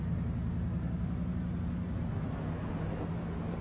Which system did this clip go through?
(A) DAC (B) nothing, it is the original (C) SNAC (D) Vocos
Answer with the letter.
B